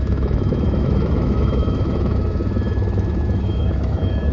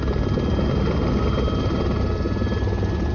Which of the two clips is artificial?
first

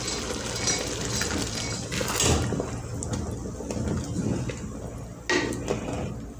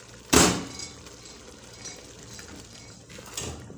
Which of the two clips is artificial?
second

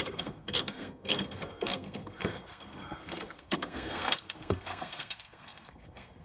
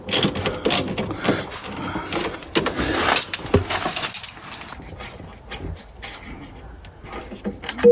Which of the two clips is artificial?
first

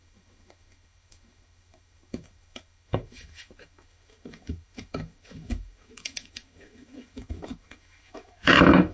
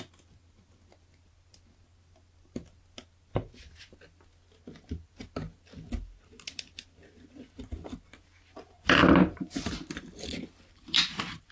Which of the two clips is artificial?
first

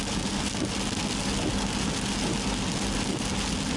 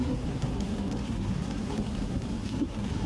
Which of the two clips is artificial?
second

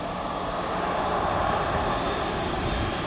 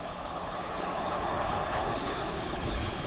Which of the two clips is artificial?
second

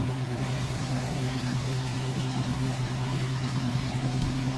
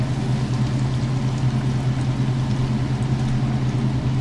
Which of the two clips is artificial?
first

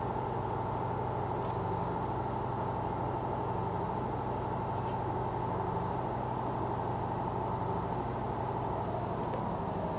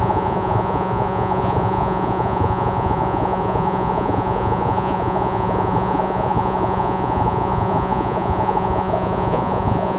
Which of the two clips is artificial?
second